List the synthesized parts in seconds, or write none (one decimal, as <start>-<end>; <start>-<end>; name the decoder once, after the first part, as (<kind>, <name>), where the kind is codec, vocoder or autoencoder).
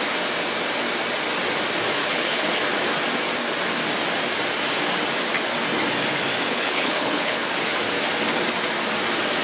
2.0-2.6 (codec, HILCodec); 6.5-7.5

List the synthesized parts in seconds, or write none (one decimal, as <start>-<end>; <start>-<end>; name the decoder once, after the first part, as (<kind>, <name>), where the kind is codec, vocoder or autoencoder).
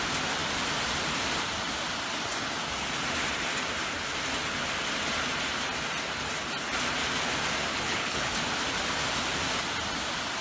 7.7-8.3 (codec, HILCodec)